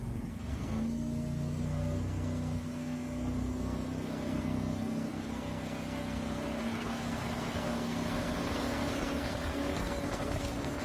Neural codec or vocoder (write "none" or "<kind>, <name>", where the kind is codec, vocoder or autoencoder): codec, SNAC